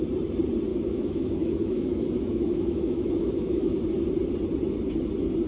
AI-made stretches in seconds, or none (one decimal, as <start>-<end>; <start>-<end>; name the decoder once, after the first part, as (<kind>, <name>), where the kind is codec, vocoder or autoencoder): 0.7-3.8 (autoencoder, DAC-VAE)